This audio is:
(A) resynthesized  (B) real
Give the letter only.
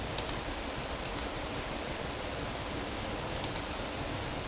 B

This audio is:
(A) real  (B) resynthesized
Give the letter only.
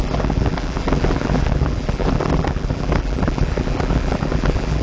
B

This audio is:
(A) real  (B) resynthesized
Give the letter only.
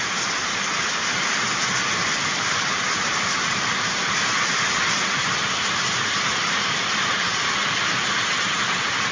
B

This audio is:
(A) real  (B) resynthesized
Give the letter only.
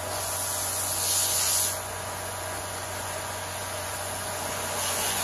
B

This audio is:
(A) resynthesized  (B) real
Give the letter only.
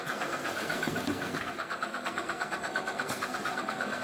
A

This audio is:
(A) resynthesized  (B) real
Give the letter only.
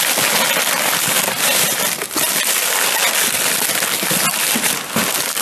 B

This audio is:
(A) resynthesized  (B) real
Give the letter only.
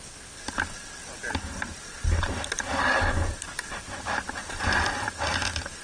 B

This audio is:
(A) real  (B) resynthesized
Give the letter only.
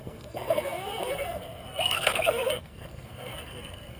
B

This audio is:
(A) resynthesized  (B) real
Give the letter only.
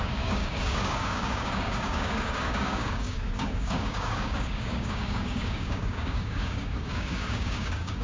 A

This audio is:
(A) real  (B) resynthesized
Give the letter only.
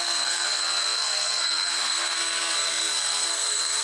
B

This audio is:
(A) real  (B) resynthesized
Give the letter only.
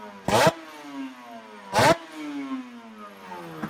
A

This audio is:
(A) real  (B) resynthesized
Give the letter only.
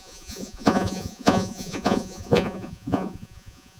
B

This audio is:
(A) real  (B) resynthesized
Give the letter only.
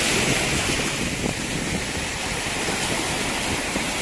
A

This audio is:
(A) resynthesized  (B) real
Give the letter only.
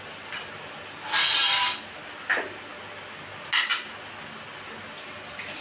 B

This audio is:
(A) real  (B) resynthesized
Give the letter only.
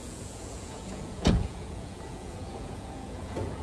B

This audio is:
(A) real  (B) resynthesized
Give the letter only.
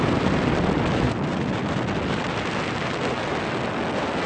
A